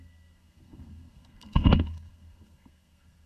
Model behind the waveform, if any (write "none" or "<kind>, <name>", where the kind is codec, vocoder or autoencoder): codec, SNAC